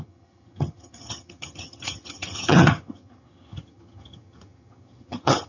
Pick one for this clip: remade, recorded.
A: remade